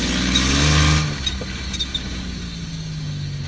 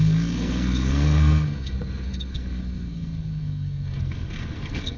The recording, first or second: first